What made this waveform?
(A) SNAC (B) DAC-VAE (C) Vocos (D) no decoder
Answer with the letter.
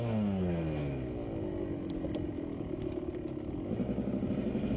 D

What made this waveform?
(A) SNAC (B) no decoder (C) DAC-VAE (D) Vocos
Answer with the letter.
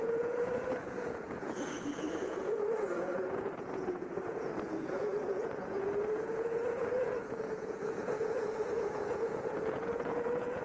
D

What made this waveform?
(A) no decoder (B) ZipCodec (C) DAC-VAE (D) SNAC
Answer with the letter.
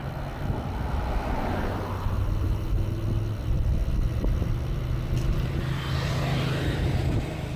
A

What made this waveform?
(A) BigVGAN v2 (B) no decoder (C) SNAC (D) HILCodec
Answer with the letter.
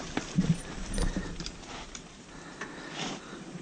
A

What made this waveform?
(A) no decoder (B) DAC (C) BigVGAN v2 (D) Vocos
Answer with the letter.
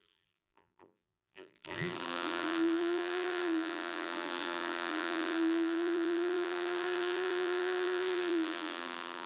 C